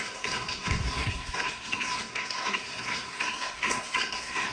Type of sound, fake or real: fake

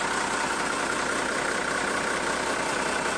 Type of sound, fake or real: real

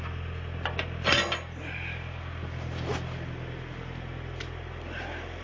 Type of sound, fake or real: real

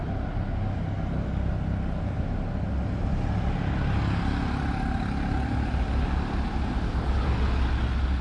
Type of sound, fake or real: real